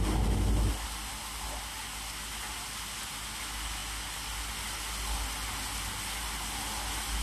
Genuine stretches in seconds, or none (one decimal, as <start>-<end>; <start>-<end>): 0.0-7.2